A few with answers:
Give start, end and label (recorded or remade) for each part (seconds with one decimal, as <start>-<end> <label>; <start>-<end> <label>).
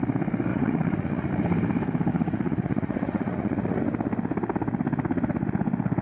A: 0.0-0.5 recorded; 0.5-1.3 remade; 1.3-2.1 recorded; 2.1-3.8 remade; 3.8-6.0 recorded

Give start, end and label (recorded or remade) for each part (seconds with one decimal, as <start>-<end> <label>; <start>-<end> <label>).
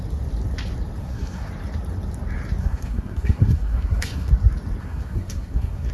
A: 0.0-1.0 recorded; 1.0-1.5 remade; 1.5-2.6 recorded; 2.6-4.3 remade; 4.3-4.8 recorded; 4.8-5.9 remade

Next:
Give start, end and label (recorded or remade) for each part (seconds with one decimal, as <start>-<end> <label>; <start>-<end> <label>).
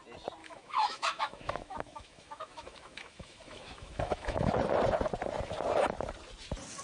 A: 0.0-0.4 recorded; 0.4-4.5 remade; 4.5-6.8 recorded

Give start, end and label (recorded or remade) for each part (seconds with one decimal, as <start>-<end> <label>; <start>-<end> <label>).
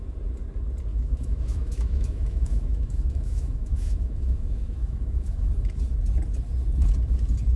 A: 0.0-0.9 recorded; 0.9-5.5 remade; 5.5-7.6 recorded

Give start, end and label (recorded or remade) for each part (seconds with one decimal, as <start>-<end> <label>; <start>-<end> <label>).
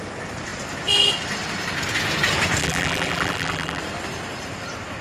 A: 0.0-2.6 recorded; 2.6-3.8 remade; 3.8-5.0 recorded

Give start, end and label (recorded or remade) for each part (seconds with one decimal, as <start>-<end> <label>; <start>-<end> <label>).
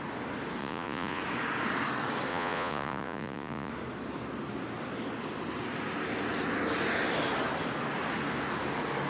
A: 0.0-0.6 recorded; 0.6-1.2 remade; 1.2-2.3 recorded; 2.3-3.7 remade; 3.7-9.1 recorded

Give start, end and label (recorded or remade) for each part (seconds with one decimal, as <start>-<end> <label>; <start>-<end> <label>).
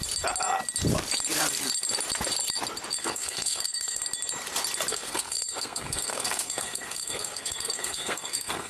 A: 0.0-3.0 recorded; 3.0-4.0 remade; 4.0-4.9 recorded; 4.9-8.7 remade